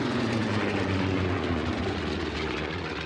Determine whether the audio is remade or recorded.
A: remade